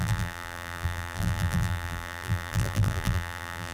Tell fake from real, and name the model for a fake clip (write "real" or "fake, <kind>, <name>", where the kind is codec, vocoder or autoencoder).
fake, vocoder, BigVGAN v2